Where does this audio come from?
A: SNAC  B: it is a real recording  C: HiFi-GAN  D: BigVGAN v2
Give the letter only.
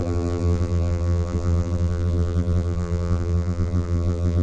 D